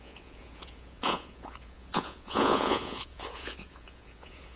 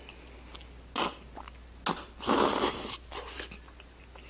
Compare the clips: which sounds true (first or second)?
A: second